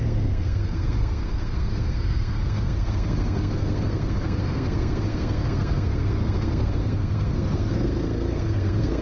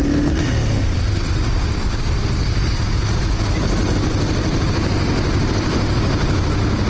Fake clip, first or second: first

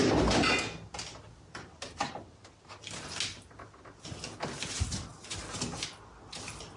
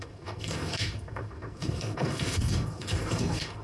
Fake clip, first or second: second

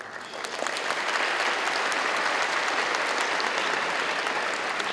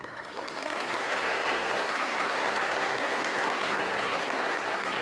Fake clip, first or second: second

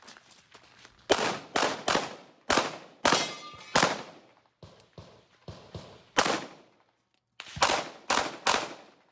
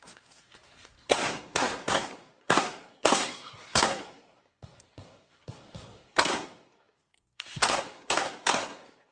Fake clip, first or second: second